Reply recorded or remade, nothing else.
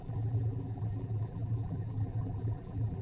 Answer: remade